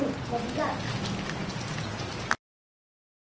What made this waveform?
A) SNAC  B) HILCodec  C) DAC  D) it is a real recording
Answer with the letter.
D